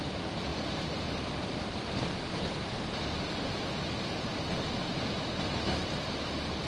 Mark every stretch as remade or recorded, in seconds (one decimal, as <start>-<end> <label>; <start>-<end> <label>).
0.0-0.5 recorded; 0.5-1.9 remade; 1.9-5.8 recorded; 5.8-6.7 remade